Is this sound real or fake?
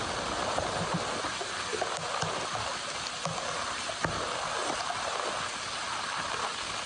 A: real